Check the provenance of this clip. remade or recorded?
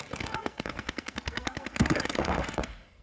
remade